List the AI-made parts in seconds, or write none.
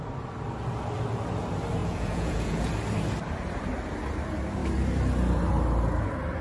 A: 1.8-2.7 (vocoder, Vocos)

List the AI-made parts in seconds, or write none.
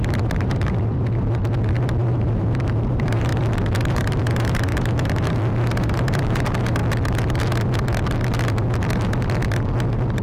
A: 0.0-0.9 (vocoder, BigVGAN v2); 1.7-3.3; 3.9-6.8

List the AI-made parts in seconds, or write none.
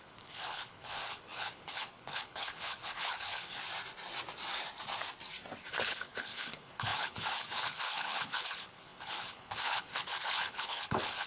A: 0.0-3.6 (codec, HILCodec); 5.7-11.3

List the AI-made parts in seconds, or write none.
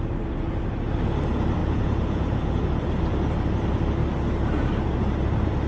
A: 1.6-3.0 (vocoder, Vocos)